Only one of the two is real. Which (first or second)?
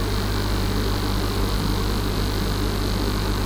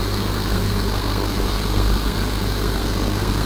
first